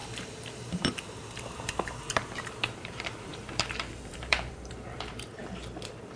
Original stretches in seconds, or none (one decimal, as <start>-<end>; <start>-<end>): 0.0-0.5; 5.4-6.2